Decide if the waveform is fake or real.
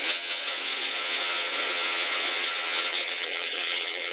fake